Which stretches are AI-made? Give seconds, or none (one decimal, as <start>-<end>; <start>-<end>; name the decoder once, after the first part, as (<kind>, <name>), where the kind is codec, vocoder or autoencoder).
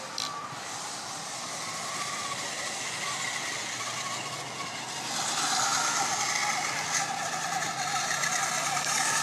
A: none